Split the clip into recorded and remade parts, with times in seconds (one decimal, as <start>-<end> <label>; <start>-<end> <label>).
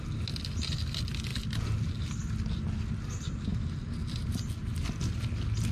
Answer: 0.0-5.7 recorded